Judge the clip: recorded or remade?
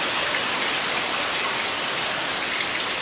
recorded